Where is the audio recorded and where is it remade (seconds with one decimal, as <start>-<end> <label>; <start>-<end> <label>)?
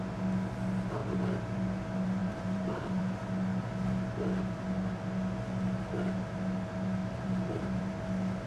0.0-1.0 recorded; 1.0-1.6 remade; 1.6-2.2 recorded; 2.2-3.0 remade; 3.0-7.0 recorded; 7.0-7.8 remade; 7.8-8.5 recorded